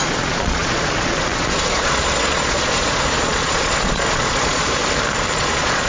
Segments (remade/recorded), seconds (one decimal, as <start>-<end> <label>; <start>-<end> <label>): 0.0-4.8 remade; 4.8-5.4 recorded; 5.4-5.9 remade